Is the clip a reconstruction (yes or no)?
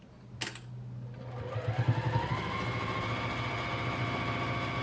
no